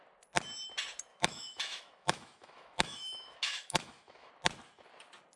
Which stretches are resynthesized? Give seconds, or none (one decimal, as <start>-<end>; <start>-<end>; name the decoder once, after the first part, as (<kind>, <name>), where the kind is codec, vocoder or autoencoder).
1.1-4.3 (autoencoder, DAC-VAE)